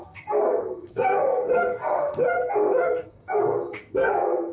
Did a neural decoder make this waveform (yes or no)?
yes